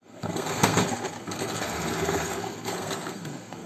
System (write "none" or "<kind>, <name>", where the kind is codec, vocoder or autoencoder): codec, SNAC